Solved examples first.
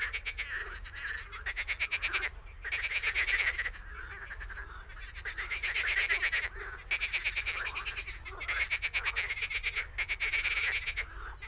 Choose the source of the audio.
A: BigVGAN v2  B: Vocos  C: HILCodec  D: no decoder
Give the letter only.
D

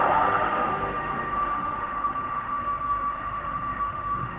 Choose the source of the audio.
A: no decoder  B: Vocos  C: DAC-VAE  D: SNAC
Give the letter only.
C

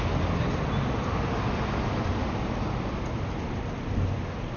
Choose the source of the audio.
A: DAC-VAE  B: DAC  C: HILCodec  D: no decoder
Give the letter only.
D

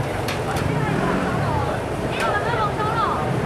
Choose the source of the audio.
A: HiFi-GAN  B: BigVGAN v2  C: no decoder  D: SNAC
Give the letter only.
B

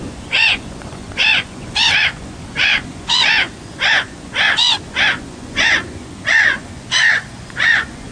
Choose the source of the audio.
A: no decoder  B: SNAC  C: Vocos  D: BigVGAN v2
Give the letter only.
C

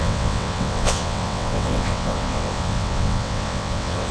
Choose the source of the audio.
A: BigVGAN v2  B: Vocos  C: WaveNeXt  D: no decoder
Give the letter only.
C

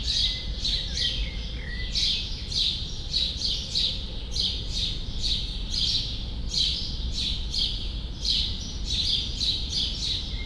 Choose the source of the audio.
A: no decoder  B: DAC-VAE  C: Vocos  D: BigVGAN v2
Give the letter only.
A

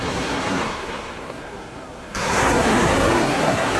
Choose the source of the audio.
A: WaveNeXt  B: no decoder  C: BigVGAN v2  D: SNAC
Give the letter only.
D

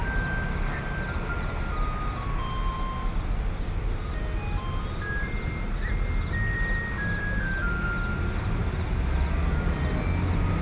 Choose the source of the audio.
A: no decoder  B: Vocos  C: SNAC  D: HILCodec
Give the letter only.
A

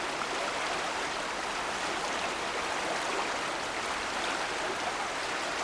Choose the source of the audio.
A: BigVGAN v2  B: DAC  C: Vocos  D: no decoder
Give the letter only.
D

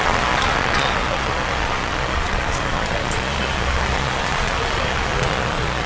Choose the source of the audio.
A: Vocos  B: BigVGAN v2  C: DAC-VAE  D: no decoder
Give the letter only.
A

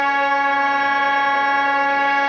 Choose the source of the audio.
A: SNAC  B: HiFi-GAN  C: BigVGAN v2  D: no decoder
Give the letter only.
D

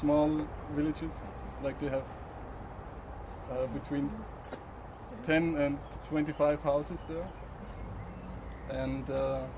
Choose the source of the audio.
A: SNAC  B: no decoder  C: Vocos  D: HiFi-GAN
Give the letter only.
B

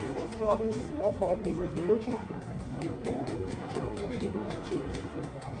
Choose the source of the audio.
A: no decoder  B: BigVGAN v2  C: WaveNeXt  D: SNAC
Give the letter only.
D